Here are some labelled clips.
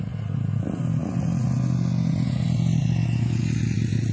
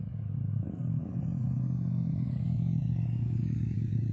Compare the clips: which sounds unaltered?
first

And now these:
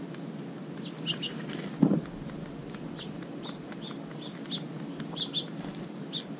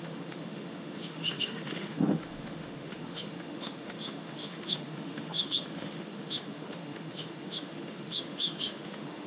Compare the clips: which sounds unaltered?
first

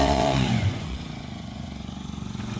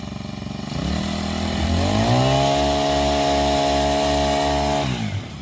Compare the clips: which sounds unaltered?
second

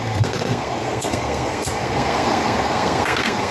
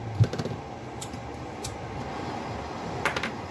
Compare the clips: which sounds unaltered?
second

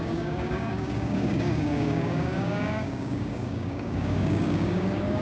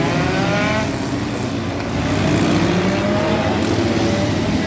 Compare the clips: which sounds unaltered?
second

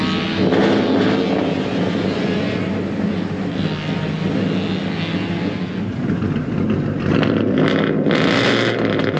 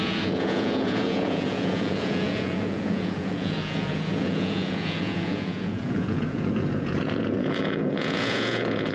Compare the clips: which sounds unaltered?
first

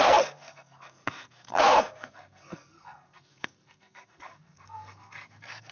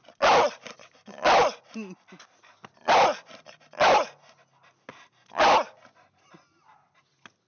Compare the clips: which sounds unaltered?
second